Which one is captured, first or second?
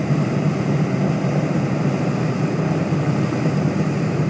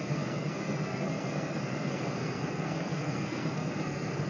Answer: first